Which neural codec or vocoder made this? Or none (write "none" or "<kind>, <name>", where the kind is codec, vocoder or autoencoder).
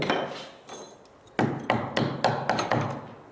none